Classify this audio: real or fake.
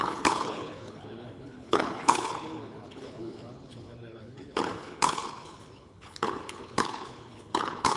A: fake